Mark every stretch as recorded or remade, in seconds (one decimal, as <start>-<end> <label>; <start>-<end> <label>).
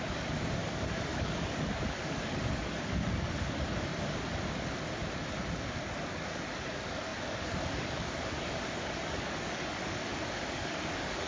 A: 0.0-3.9 remade; 3.9-5.6 recorded; 5.6-11.3 remade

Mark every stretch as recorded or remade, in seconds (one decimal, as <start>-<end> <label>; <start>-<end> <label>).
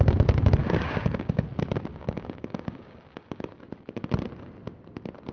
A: 0.0-0.6 recorded; 0.6-1.4 remade; 1.4-1.9 recorded; 1.9-3.6 remade; 3.6-5.3 recorded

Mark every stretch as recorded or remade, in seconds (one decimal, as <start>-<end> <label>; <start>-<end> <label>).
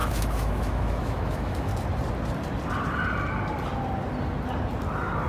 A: 0.0-1.7 remade; 1.7-5.3 recorded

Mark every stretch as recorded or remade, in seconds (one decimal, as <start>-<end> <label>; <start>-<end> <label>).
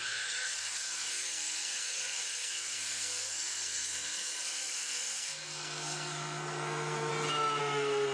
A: 0.0-7.1 remade; 7.1-7.6 recorded; 7.6-8.1 remade